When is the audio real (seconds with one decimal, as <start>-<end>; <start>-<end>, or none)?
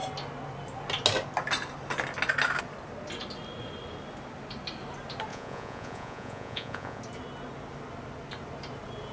0.0-5.3; 7.0-9.1